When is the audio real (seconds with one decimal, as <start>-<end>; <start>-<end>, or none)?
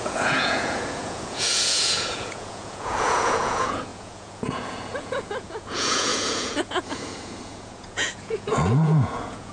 none